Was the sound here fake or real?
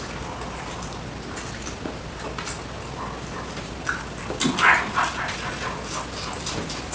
real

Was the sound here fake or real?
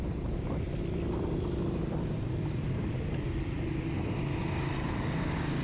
real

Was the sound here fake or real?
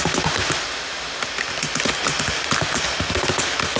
real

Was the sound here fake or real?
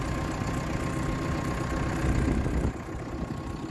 real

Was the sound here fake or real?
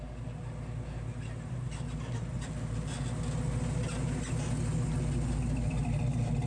real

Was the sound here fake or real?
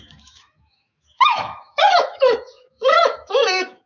fake